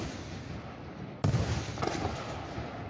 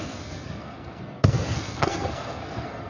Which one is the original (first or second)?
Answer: first